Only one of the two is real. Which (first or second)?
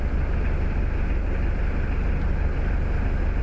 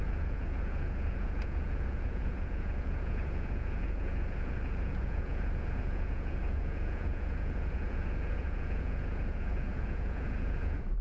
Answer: first